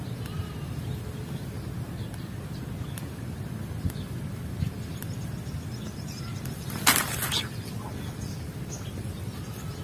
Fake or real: real